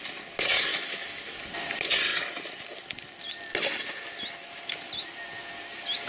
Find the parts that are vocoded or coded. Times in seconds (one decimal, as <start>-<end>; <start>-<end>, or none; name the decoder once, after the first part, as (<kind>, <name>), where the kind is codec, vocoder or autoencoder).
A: 0.7-1.4 (autoencoder, DAC-VAE)